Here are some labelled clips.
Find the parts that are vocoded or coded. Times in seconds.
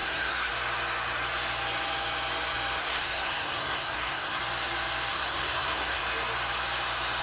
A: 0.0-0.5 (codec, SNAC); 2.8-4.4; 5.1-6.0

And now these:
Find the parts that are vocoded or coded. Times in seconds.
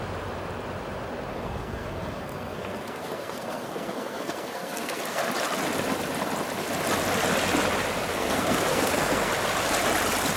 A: 1.3-5.3 (codec, SNAC); 8.1-9.3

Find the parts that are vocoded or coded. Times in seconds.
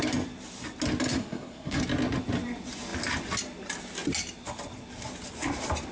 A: 1.1-1.8 (codec, SNAC)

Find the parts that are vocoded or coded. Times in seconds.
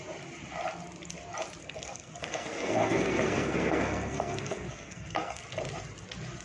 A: 1.6-5.4 (codec, SNAC)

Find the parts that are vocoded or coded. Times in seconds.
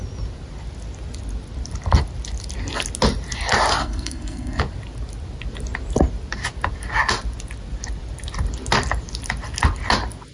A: 3.8-4.6 (codec, SNAC)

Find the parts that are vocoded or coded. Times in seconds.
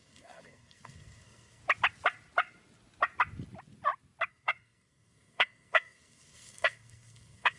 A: 0.0-1.6 (codec, SNAC); 4.3-7.6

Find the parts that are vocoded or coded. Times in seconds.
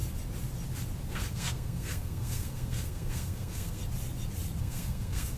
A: 1.1-3.8 (codec, SNAC); 4.6-5.4